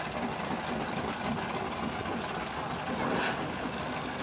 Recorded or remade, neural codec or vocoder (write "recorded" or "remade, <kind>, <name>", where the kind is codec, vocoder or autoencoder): recorded